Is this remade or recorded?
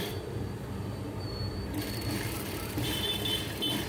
remade